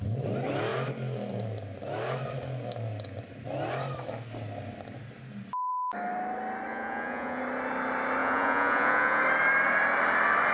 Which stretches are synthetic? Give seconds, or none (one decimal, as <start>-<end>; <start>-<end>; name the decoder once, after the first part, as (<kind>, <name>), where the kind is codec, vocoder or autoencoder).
6.7-7.4 (vocoder, Vocos); 8.2-9.2